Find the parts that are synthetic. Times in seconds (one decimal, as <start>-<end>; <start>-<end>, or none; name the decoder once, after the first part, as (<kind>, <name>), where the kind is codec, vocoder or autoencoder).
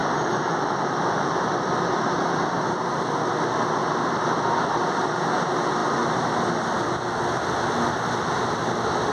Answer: 0.0-2.4 (vocoder, BigVGAN v2)